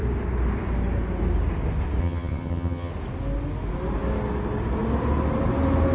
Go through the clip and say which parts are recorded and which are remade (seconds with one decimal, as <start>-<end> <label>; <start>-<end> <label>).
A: 0.0-2.0 recorded; 2.0-2.9 remade; 2.9-5.9 recorded